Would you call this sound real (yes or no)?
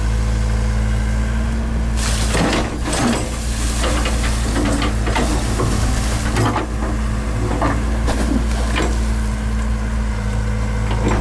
yes